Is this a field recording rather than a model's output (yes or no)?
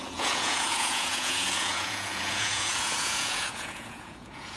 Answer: no